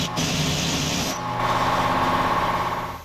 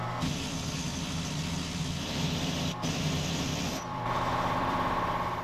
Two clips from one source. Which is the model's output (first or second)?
second